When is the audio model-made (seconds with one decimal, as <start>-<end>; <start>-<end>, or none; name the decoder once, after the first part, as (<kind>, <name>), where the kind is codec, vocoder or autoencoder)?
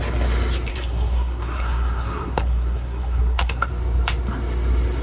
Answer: 0.7-3.7 (codec, SNAC)